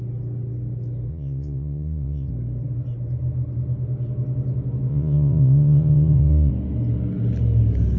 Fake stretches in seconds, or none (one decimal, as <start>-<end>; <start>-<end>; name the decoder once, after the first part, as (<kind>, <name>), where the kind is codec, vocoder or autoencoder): 1.1-2.3 (vocoder, Vocos); 4.9-6.5